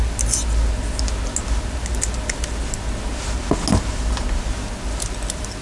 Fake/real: real